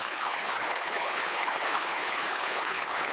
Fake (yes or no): yes